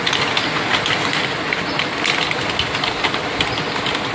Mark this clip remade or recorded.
recorded